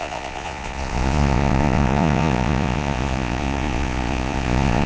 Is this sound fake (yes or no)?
yes